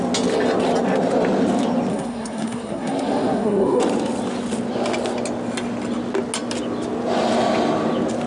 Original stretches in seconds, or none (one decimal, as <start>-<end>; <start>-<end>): 0.0-1.9; 3.8-8.3